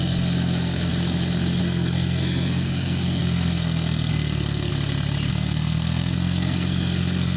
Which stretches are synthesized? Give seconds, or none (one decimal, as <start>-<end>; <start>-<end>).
0.0-0.9; 1.6-4.7; 5.3-7.4

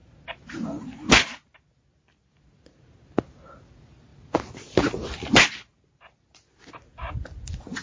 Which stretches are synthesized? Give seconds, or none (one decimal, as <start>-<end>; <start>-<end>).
none

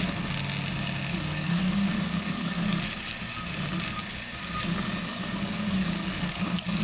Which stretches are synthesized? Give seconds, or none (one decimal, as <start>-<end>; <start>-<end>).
1.1-2.8; 5.1-6.8

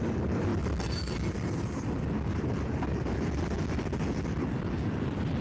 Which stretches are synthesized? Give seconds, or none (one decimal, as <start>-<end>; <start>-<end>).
none

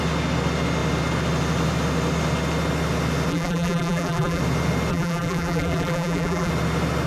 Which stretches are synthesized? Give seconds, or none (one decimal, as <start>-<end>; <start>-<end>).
3.3-4.4; 4.9-6.5

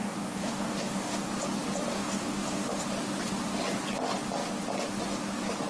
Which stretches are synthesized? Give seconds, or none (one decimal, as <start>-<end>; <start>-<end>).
0.0-1.3; 1.9-2.8

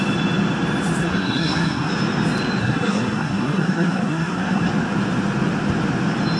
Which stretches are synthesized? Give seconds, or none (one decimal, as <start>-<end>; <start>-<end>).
1.0-1.9; 2.6-4.7